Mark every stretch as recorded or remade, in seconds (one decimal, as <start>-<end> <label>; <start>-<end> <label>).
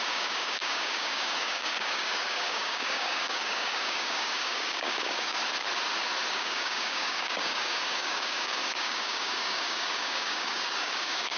0.0-5.4 remade; 5.4-6.3 recorded; 6.3-11.4 remade